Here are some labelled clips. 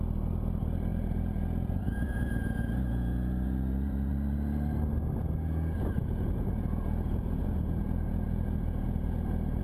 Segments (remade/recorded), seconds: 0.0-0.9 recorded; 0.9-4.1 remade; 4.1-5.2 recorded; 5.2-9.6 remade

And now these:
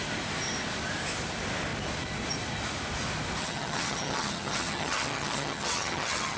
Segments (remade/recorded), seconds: 0.0-3.4 recorded; 3.4-6.4 remade

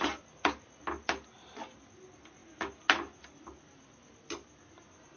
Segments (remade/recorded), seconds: 0.0-5.2 recorded

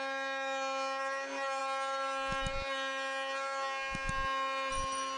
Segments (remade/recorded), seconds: 0.0-5.2 recorded

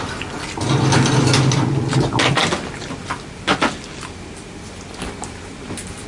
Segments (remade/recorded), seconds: 0.0-6.1 recorded